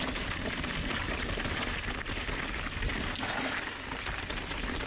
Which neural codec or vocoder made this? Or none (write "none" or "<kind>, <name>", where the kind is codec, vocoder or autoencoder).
none